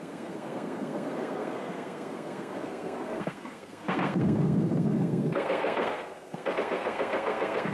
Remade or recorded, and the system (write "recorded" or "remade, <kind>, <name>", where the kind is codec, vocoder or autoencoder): remade, codec, SNAC